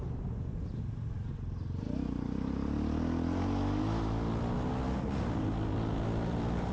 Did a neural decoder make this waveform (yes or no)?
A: no